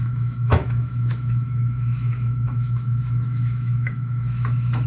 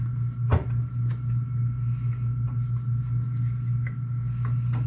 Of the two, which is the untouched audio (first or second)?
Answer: second